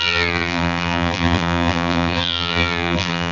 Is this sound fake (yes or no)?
yes